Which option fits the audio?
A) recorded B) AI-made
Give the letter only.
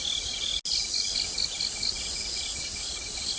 A